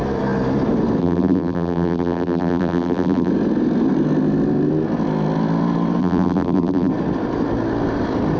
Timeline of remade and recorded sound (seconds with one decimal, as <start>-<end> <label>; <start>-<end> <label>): 0.0-1.0 recorded; 1.0-3.3 remade; 3.3-6.0 recorded; 6.0-6.9 remade; 6.9-8.4 recorded